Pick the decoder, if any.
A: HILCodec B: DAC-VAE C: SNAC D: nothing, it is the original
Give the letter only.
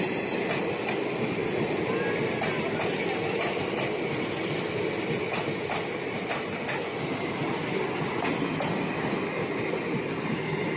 D